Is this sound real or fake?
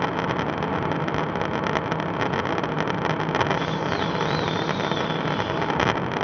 real